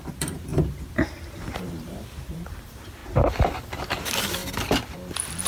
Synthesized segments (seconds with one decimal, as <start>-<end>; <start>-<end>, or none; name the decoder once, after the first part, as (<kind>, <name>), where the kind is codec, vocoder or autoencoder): 0.0-3.0 (vocoder, BigVGAN v2); 3.8-4.4